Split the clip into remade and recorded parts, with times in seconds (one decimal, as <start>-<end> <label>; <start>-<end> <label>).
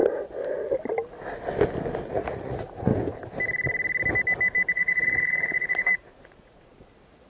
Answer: 0.0-2.1 recorded; 2.1-2.9 remade; 2.9-4.7 recorded; 4.7-7.3 remade